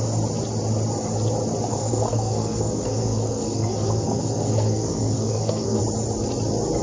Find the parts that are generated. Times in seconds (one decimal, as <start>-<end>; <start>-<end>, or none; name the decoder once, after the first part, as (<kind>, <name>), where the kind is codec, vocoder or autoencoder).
1.7-5.8 (codec, SNAC)